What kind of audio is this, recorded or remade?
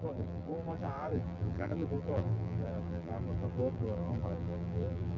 remade